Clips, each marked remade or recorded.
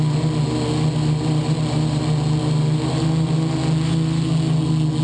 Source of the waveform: recorded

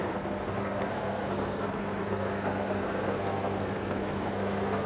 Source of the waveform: remade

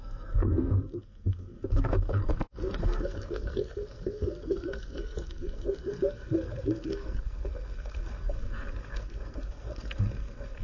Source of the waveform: remade